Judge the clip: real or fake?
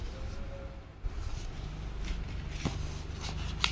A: real